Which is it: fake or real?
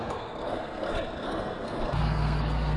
fake